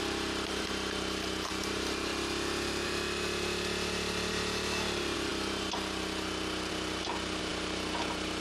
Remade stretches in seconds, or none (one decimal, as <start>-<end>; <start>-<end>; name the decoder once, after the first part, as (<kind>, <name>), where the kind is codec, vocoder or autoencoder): 0.0-2.1 (vocoder, BigVGAN v2); 4.3-8.4